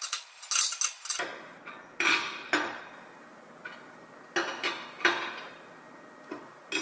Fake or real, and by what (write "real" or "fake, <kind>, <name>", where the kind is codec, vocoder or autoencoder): real